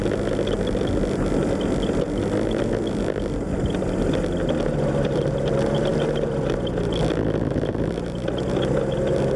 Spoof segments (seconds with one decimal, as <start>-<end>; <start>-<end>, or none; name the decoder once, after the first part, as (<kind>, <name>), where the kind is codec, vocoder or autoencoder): none